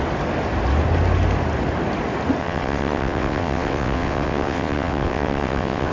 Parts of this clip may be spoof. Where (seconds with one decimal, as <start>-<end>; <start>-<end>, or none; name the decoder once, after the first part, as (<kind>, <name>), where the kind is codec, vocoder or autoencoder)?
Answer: 2.4-5.9 (vocoder, WaveNeXt)